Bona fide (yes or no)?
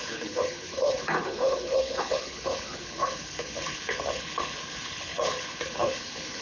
no